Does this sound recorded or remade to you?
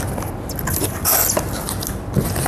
recorded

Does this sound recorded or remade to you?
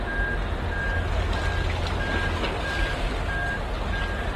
recorded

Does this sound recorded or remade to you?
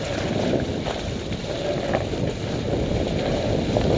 recorded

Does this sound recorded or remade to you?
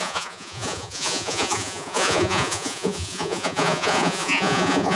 remade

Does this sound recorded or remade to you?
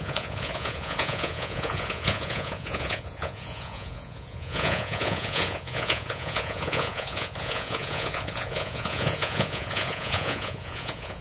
remade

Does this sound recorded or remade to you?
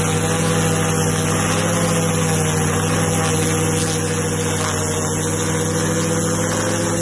recorded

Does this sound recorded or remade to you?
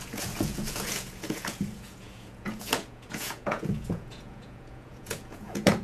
remade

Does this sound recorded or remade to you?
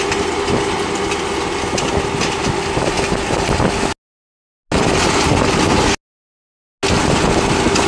recorded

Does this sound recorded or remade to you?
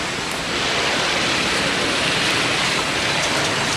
recorded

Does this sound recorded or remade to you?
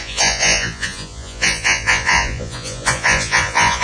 remade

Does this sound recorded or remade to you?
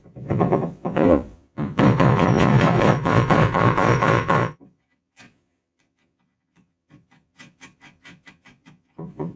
remade